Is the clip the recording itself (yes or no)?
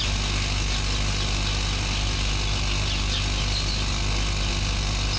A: yes